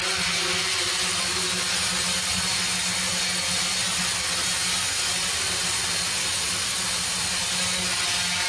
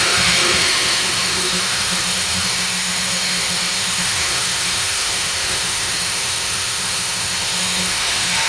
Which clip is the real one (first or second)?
first